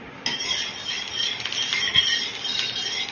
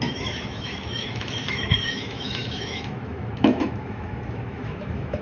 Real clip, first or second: first